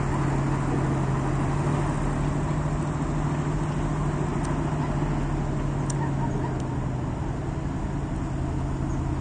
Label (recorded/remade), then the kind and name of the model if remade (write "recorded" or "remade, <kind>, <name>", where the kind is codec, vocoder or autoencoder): recorded